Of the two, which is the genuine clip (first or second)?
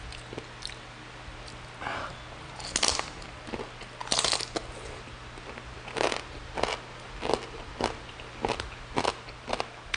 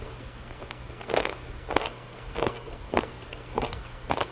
first